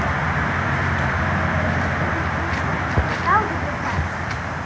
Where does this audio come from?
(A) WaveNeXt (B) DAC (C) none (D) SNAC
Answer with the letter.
C